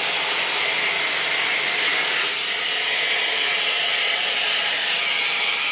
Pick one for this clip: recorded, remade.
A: recorded